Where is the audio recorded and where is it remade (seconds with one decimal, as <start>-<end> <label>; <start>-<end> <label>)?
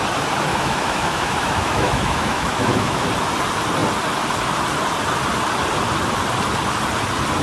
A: 0.0-0.5 recorded; 0.5-3.1 remade; 3.1-7.4 recorded